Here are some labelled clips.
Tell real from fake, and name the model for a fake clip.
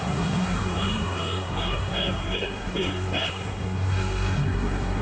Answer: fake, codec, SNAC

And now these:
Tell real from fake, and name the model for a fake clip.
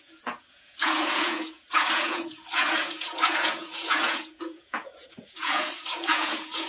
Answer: fake, vocoder, Vocos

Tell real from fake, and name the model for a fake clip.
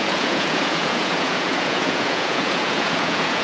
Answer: fake, vocoder, Vocos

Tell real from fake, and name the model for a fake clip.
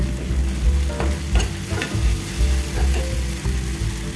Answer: real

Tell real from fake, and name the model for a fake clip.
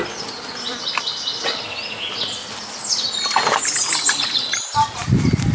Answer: real